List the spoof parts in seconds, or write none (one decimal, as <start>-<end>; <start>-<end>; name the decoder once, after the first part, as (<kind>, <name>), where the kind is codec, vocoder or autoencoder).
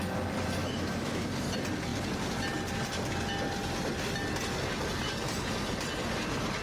0.6-1.3 (autoencoder, DAC-VAE)